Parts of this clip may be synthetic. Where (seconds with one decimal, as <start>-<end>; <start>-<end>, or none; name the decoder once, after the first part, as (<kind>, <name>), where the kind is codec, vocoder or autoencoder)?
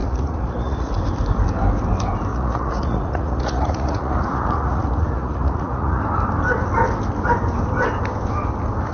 0.0-0.9 (vocoder, Vocos); 2.3-6.0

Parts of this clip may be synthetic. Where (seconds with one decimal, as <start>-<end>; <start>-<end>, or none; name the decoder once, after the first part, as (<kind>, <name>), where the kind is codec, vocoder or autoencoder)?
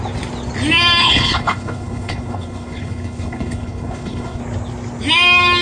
1.0-4.4 (codec, HILCodec)